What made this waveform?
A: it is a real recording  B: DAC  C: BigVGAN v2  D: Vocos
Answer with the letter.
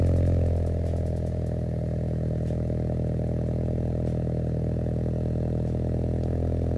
A